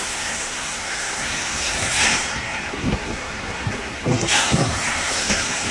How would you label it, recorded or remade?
remade